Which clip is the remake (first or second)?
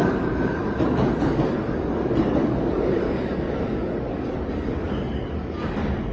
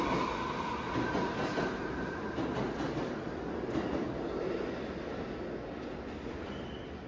first